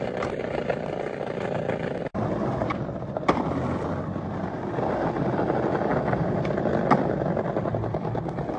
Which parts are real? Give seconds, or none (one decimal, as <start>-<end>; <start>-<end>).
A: 0.0-8.6